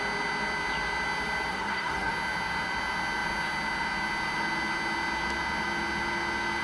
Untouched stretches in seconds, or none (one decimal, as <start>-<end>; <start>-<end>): 0.0-1.5; 2.1-6.6